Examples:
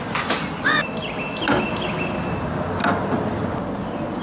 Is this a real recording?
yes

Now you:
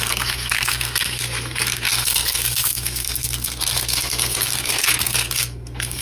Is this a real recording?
no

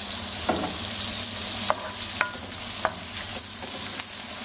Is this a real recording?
yes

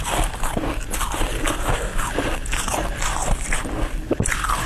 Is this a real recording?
yes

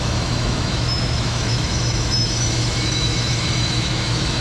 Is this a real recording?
no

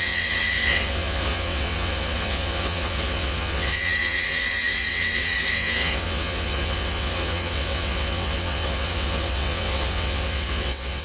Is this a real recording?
no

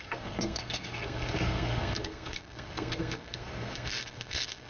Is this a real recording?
no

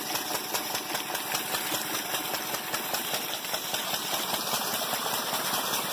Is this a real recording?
yes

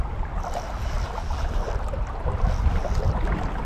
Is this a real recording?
yes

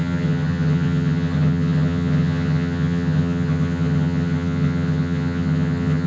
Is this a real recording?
no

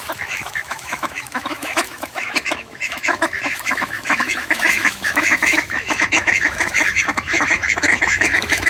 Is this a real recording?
no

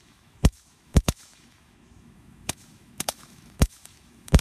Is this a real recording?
no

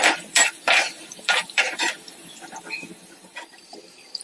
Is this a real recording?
no